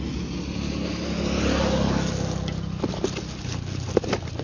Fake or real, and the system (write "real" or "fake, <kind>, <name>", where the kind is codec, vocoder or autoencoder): real